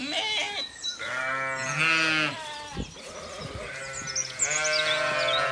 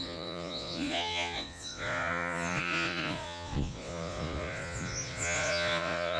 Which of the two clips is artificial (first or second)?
second